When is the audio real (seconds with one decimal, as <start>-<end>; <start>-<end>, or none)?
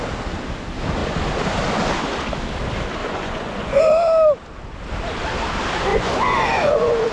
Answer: 0.0-3.0; 3.8-5.9